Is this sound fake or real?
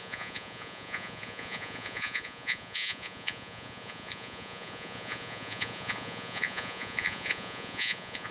fake